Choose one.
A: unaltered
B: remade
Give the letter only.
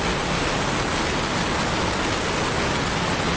A